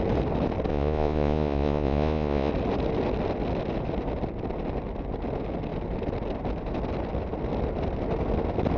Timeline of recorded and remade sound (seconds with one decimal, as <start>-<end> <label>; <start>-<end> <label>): 0.0-0.7 recorded; 0.7-2.5 remade; 2.5-8.8 recorded